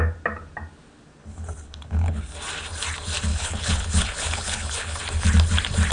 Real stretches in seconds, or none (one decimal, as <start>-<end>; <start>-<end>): 0.0-1.2; 2.2-3.3; 5.0-5.9